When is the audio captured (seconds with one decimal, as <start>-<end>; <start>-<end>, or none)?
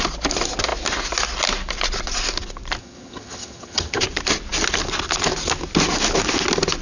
0.0-2.8; 4.0-6.8